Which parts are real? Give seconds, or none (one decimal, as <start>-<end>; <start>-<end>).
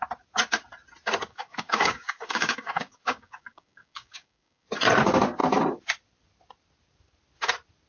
0.0-1.3; 4.7-7.9